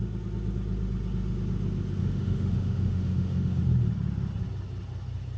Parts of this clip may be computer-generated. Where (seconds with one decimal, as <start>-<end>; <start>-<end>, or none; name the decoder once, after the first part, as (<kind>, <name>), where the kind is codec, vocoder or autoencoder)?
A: 2.0-3.6 (autoencoder, DAC-VAE)